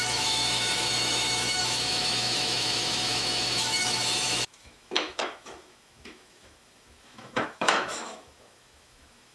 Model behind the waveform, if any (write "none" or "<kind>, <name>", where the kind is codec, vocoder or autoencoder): autoencoder, DAC-VAE